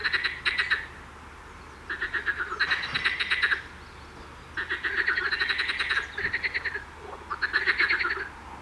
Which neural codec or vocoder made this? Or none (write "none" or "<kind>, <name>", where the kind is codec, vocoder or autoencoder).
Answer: none